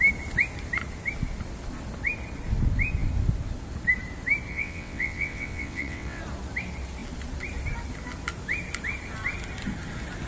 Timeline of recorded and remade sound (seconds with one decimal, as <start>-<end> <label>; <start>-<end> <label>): 0.0-4.5 recorded; 4.5-6.2 remade; 6.2-10.3 recorded